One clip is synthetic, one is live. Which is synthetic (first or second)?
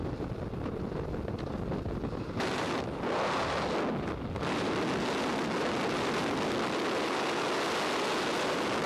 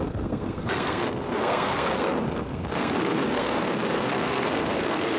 second